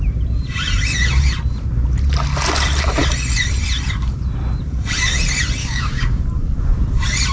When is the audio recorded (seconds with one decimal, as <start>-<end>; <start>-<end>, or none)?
0.0-5.6; 6.2-7.3